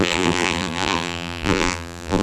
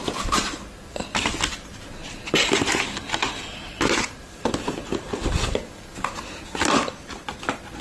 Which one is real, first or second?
second